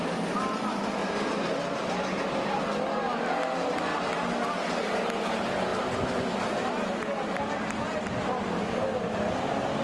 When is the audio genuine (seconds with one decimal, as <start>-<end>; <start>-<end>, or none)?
0.0-1.0; 2.6-5.7; 6.3-9.8